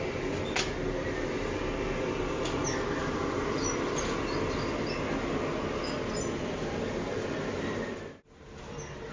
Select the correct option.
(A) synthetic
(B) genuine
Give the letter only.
B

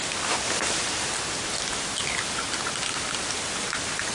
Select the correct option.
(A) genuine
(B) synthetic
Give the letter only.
A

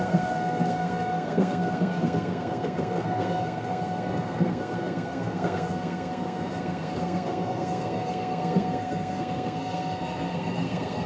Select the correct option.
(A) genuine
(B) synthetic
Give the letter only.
B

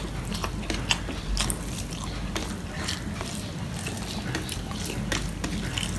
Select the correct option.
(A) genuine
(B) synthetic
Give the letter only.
A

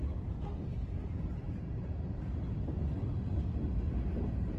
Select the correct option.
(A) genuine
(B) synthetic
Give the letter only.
A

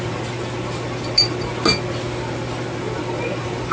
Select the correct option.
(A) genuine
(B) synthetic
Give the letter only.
A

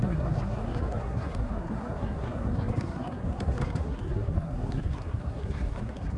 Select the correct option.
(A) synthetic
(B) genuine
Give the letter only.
A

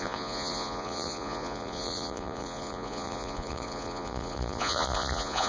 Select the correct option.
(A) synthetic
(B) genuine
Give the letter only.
A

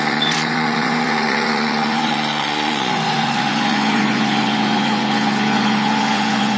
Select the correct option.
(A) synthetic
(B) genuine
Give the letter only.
A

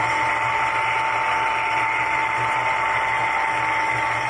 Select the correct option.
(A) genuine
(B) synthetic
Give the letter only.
A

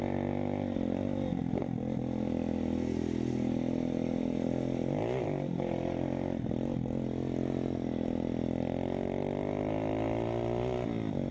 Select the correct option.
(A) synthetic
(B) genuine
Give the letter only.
B